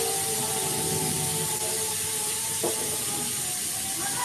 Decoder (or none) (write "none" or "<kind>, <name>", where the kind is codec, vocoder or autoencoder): none